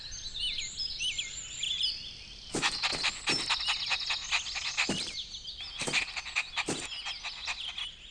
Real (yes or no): yes